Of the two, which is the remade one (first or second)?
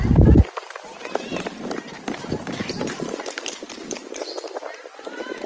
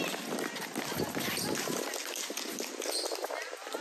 first